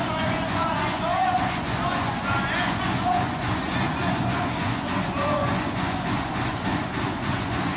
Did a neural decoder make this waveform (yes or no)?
yes